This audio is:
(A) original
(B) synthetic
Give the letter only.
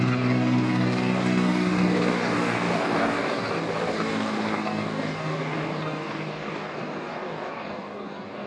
B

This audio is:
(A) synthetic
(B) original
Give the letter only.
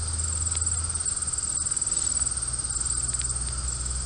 B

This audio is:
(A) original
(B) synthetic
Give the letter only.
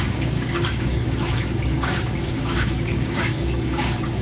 B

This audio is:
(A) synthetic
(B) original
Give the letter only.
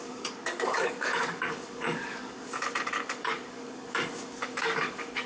A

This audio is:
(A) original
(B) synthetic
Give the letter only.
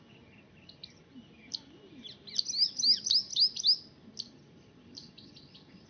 A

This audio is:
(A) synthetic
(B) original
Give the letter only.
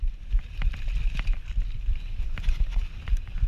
B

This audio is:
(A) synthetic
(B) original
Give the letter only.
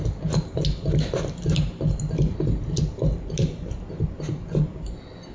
B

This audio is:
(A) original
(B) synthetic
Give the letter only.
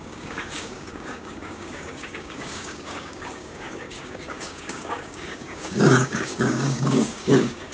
B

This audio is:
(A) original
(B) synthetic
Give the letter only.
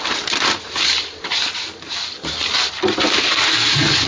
A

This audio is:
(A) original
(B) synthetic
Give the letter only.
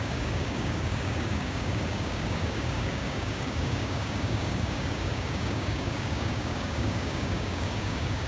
B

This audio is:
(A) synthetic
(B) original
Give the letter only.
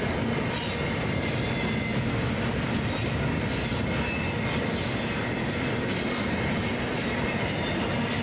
B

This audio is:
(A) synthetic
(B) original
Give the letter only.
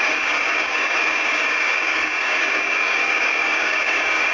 A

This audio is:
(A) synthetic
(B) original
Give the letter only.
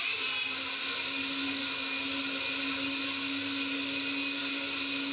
B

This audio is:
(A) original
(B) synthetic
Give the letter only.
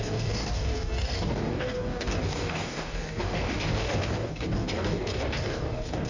B